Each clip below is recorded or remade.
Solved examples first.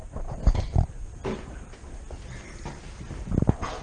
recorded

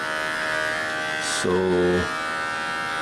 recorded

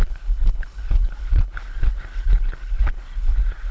remade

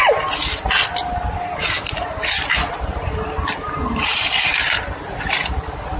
recorded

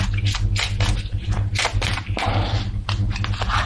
recorded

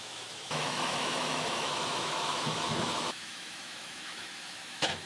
remade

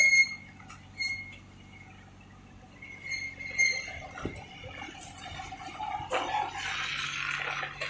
recorded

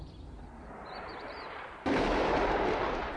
remade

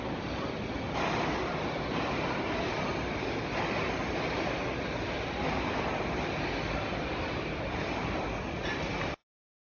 recorded